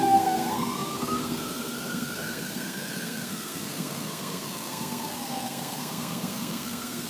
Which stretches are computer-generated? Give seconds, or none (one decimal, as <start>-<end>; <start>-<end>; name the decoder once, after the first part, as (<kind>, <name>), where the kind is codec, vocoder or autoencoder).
0.0-7.1 (codec, SNAC)